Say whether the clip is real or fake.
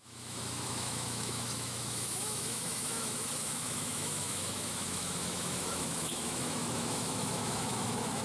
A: fake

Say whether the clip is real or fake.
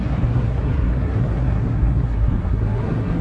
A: fake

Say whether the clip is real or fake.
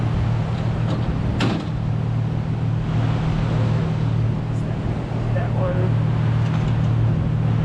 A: real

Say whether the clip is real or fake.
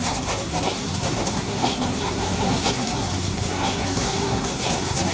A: fake